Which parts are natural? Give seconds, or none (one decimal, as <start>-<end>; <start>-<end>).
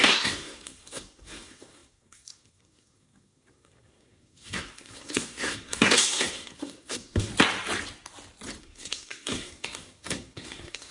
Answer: 7.3-8.6